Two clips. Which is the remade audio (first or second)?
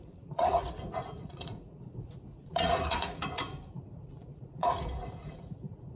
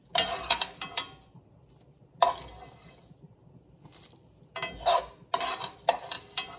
first